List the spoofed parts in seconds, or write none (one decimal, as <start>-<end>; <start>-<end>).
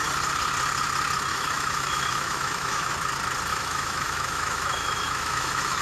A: 1.3-2.9; 3.5-5.8